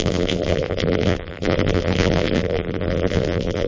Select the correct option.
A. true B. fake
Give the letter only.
B